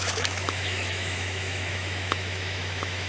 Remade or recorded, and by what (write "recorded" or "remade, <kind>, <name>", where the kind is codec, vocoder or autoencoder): remade, autoencoder, DAC-VAE